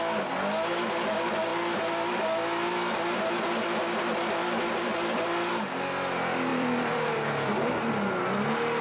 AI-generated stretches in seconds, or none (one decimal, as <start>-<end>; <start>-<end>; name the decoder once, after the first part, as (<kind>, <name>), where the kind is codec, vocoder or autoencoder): 1.5-3.3 (vocoder, BigVGAN v2); 4.4-5.5; 6.5-7.9